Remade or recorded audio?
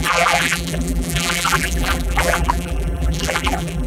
remade